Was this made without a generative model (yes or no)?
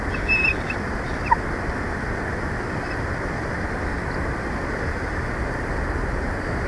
yes